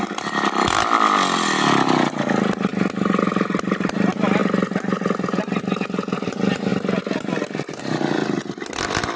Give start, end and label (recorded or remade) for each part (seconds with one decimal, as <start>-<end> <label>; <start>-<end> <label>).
0.0-9.2 recorded